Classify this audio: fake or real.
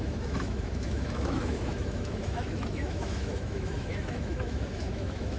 fake